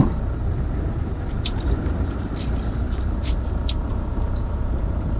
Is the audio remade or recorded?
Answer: remade